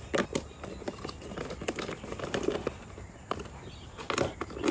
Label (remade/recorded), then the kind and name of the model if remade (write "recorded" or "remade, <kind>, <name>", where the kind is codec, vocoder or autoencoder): recorded